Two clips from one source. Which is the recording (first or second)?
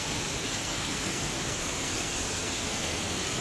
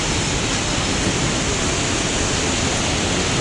second